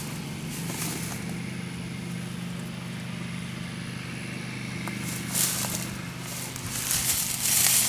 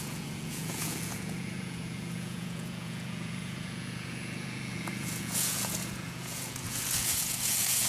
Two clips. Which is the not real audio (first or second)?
second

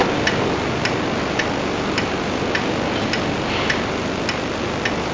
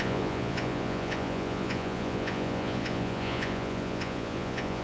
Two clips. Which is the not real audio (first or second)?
second